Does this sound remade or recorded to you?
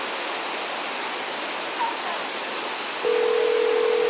recorded